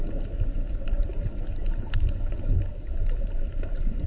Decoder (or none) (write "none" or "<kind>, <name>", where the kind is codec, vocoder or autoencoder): none